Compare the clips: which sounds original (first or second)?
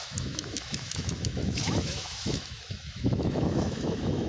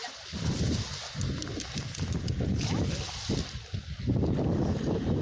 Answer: second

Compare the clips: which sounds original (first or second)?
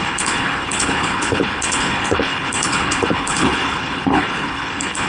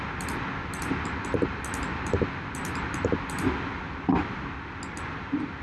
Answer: second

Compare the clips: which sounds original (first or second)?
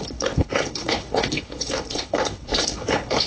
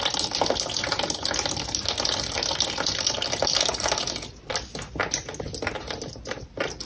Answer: second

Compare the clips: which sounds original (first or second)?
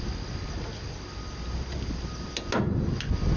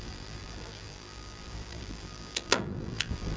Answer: first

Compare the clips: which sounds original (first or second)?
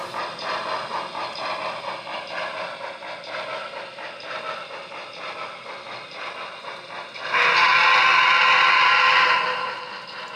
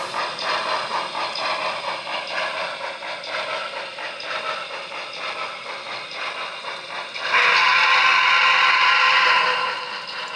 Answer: first